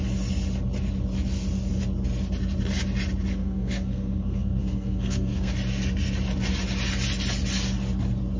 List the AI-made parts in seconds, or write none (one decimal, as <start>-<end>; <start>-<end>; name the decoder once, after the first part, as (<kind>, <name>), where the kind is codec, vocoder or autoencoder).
3.3-5.5 (codec, SNAC)